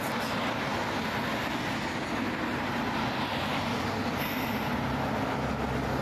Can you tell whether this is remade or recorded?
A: recorded